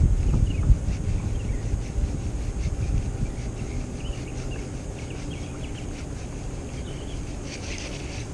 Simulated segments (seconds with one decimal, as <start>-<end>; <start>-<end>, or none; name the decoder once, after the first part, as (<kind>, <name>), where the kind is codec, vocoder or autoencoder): none